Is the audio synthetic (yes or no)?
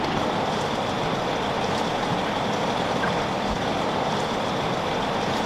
no